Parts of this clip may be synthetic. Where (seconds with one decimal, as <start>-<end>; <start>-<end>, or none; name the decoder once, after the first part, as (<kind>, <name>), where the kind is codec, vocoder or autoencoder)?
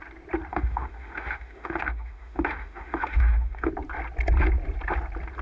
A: 0.5-3.7 (autoencoder, DAC-VAE)